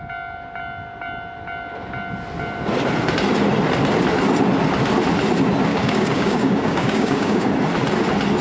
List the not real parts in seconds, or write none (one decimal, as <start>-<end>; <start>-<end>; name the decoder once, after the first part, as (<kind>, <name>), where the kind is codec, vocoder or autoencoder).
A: 5.7-7.5 (codec, DAC)